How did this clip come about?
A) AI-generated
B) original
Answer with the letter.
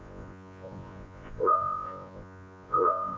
A